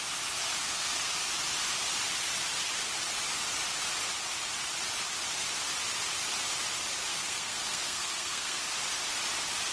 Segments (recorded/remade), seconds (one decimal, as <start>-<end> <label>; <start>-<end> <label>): 0.0-0.6 recorded; 0.6-1.1 remade; 1.1-7.1 recorded; 7.1-8.6 remade; 8.6-9.7 recorded